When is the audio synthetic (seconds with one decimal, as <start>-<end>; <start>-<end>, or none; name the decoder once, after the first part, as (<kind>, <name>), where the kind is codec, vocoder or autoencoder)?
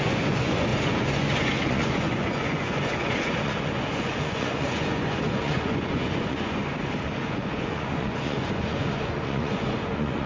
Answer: 0.0-6.6 (vocoder, Vocos); 7.2-10.3